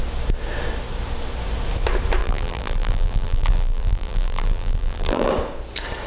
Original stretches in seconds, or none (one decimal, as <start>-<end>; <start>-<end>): 0.0-2.2; 5.3-6.1